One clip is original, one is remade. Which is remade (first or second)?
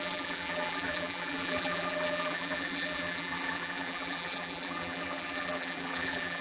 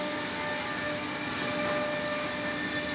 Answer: first